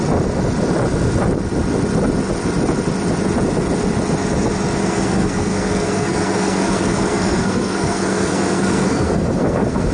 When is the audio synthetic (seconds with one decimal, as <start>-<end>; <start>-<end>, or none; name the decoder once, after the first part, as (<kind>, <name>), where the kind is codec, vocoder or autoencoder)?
4.8-9.9 (codec, SNAC)